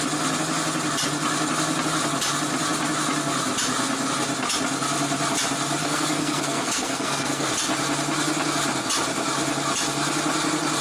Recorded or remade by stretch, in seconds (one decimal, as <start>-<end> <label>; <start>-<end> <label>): 0.0-5.8 recorded; 5.8-7.5 remade; 7.5-10.8 recorded